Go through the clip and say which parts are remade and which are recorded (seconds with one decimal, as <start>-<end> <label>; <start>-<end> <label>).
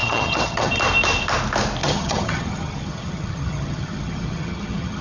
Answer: 0.0-0.7 remade; 0.7-1.8 recorded; 1.8-5.0 remade